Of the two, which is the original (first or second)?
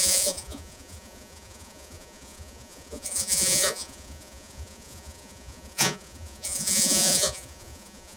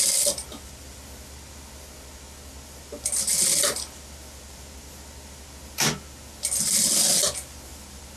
second